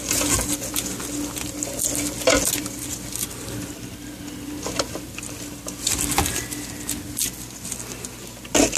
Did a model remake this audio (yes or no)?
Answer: no